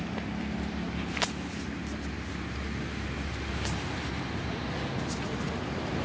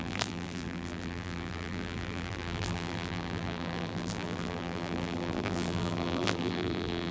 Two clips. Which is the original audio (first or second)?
first